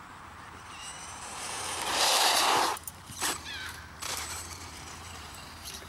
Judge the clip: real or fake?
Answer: fake